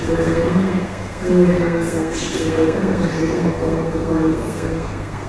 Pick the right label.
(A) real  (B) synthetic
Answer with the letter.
B